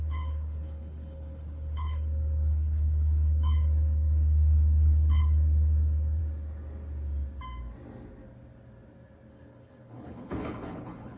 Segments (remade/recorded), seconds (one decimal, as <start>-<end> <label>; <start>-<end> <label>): 0.0-6.2 remade; 6.2-9.3 recorded; 9.3-11.2 remade